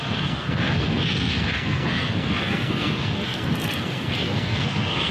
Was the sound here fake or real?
fake